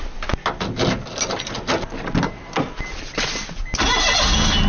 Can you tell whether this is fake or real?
real